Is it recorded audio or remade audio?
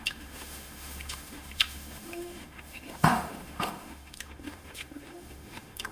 remade